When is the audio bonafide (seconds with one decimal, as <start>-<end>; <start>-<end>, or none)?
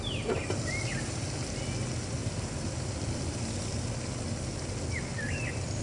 0.0-5.8